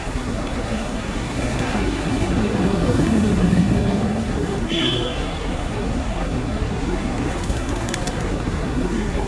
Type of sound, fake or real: fake